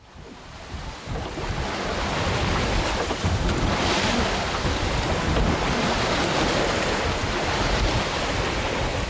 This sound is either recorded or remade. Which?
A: recorded